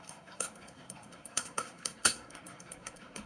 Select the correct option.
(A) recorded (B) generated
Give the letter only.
B